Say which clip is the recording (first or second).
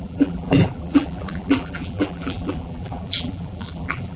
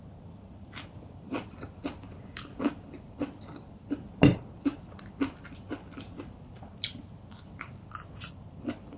second